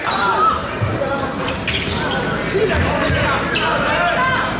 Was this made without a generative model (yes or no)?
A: yes